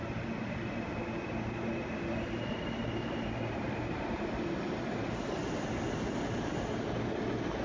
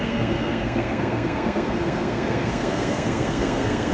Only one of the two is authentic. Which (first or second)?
first